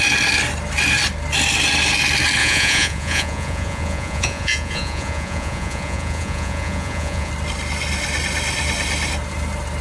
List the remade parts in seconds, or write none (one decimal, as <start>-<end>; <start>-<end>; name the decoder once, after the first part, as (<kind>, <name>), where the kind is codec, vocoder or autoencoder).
2.4-7.3 (vocoder, Vocos)